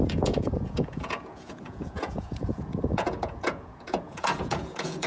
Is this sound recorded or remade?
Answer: remade